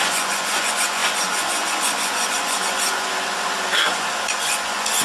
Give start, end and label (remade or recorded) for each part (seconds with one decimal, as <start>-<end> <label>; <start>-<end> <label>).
0.0-5.0 remade